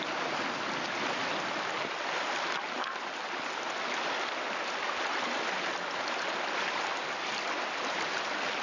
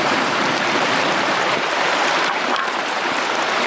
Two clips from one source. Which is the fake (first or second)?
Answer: second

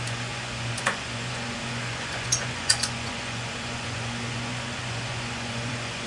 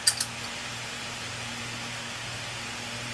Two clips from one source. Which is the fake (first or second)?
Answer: first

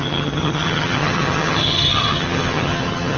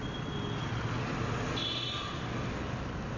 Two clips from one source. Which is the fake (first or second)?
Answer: first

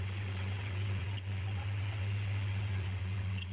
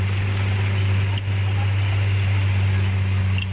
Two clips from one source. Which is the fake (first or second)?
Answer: first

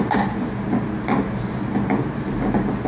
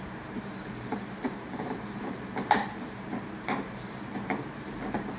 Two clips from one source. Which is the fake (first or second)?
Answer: second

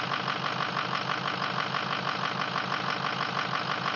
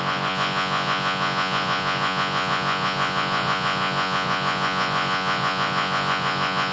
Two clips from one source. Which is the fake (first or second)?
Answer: second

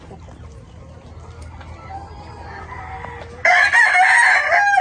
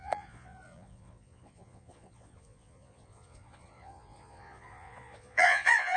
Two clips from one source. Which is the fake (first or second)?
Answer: second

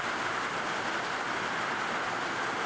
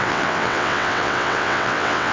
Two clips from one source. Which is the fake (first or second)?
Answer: second